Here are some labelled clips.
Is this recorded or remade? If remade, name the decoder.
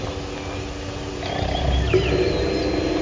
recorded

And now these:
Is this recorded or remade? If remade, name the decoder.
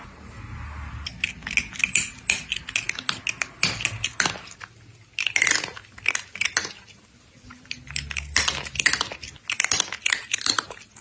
recorded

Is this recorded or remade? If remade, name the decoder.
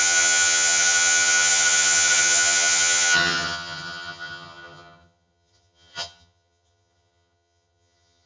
remade, vocoder, HiFi-GAN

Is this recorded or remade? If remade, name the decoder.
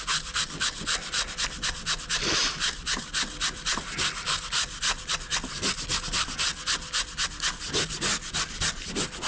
recorded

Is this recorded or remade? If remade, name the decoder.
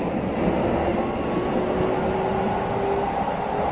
recorded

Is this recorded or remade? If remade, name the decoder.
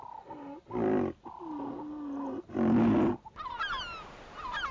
recorded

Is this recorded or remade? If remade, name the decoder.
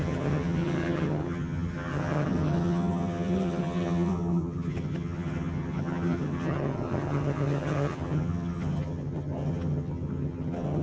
remade, vocoder, HiFi-GAN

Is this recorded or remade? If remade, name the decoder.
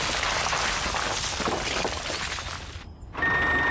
recorded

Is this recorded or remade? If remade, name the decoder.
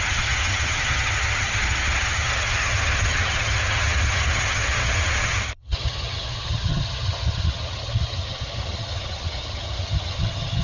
remade, vocoder, HiFi-GAN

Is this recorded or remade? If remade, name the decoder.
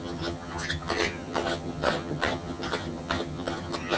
remade, vocoder, HiFi-GAN